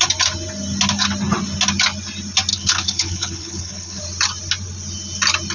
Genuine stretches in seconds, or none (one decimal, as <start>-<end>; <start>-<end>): 0.0-2.5; 4.0-5.5